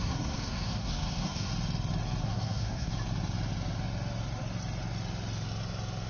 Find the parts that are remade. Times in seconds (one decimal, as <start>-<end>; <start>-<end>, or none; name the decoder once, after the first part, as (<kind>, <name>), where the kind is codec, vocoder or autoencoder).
0.0-1.5 (codec, SNAC); 2.2-2.9